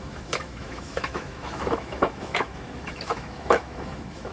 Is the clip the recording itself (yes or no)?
no